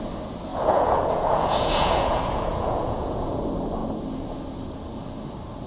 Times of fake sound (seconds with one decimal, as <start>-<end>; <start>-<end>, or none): 0.5-3.4

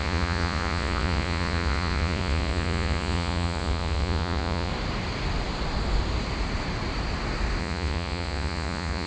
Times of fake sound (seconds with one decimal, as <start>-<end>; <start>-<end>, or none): 0.0-4.7; 7.6-9.1

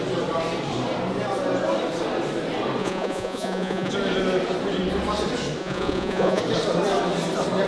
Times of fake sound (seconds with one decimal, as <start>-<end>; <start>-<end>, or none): 2.8-3.9; 5.6-6.4